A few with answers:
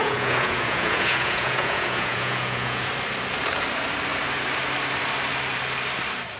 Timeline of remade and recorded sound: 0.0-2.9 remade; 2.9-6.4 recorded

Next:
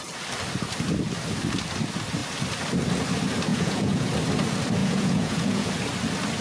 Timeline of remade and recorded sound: 0.0-3.5 recorded; 3.5-4.1 remade; 4.1-4.8 recorded; 4.8-5.7 remade; 5.7-6.4 recorded

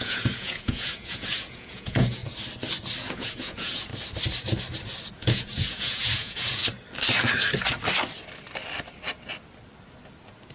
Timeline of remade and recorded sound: 0.0-2.2 remade; 2.2-3.0 recorded; 3.0-3.9 remade; 3.9-5.1 recorded; 5.1-6.6 remade; 6.6-10.5 recorded

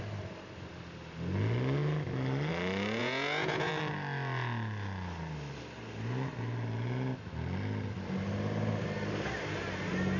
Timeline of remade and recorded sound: 0.0-3.0 recorded; 3.0-3.7 remade; 3.7-10.2 recorded

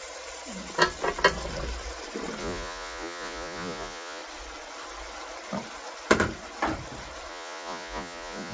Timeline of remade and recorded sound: 0.0-2.4 recorded; 2.4-4.2 remade; 4.2-7.3 recorded; 7.3-8.5 remade

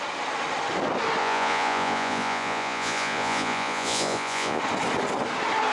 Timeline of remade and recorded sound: 0.0-1.2 recorded; 1.2-4.6 remade; 4.6-5.7 recorded

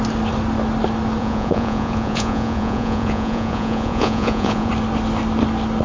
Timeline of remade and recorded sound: 0.0-1.2 recorded; 1.2-4.7 remade; 4.7-5.8 recorded